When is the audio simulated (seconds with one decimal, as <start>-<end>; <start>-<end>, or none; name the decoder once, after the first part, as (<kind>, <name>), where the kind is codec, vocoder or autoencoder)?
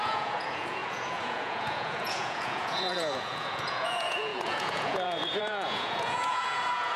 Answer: 0.0-7.0 (vocoder, Vocos)